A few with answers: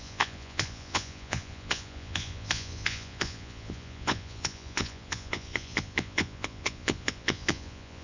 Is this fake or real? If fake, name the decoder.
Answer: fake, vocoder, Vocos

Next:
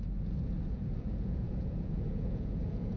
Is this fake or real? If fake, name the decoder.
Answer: fake, vocoder, Vocos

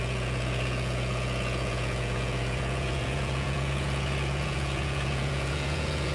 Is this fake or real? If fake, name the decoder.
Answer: fake, vocoder, Vocos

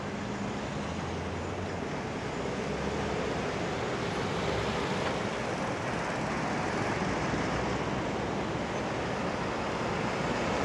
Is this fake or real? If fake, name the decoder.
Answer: real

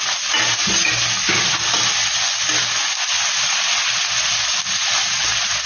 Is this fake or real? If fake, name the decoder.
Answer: real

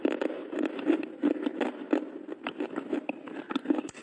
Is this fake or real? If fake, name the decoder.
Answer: real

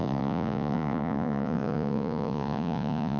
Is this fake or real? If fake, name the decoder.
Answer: fake, vocoder, Vocos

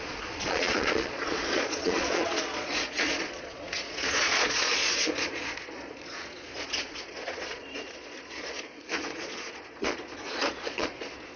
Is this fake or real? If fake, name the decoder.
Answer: fake, vocoder, Vocos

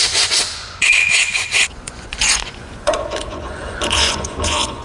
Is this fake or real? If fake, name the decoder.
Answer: fake, vocoder, Vocos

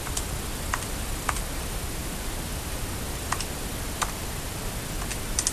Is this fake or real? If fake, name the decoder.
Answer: real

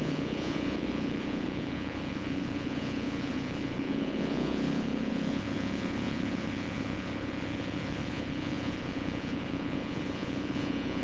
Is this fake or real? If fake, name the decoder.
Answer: fake, vocoder, Vocos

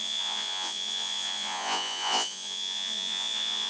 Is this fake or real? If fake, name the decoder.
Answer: fake, vocoder, Vocos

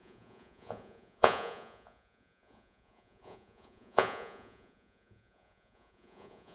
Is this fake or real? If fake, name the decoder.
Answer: fake, vocoder, Vocos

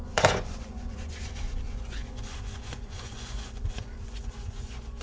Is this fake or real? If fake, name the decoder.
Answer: fake, vocoder, Vocos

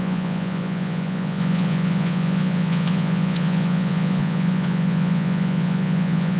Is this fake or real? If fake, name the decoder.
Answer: fake, vocoder, Vocos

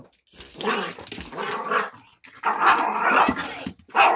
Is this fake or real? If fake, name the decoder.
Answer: real